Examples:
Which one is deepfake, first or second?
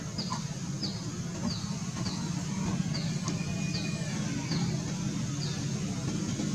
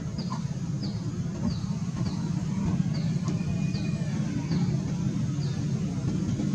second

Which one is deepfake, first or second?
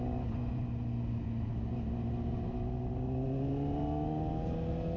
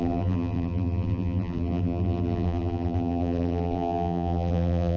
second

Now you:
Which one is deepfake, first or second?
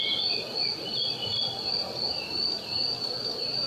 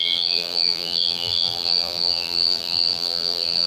second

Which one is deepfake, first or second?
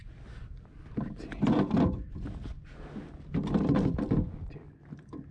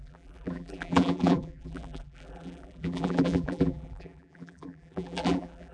second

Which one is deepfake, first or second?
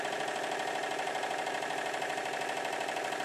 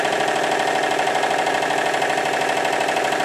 first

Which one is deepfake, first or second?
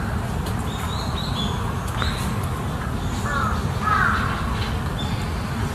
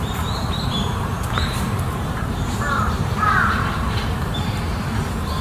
second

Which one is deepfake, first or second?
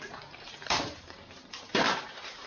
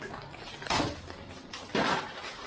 first